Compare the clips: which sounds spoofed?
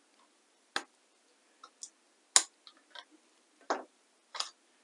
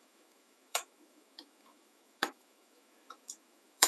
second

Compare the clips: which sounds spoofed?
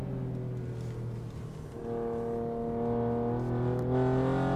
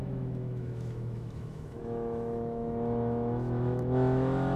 second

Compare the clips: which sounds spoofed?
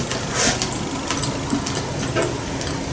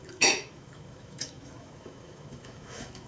second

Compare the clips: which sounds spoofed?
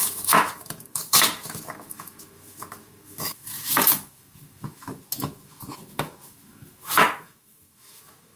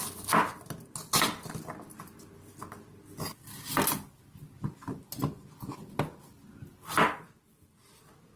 first